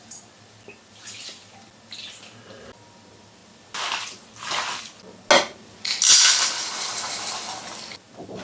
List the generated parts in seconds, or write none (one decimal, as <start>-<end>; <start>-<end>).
none